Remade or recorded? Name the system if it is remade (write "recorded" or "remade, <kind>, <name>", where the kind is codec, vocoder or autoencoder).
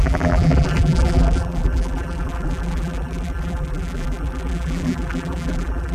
remade, vocoder, BigVGAN v2